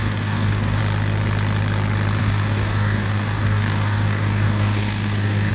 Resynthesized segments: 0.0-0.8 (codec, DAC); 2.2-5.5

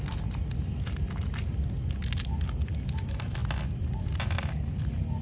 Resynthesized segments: none

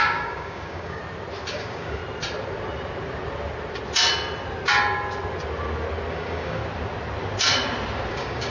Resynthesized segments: 0.0-1.0 (codec, DAC); 1.5-2.0; 6.1-6.6; 8.1-8.5

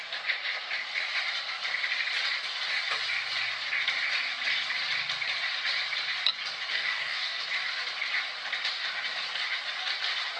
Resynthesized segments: 6.7-7.4 (codec, DAC)

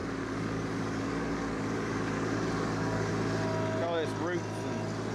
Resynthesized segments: 0.0-3.1 (codec, DAC)